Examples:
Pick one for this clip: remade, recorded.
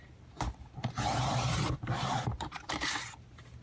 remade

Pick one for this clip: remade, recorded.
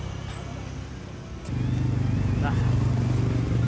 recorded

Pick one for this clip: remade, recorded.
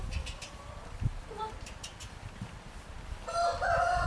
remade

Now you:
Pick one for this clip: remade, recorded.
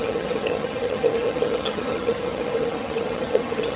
remade